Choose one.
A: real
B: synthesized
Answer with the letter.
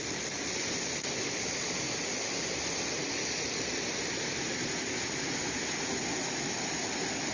A